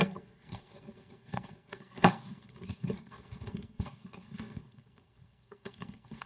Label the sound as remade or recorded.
remade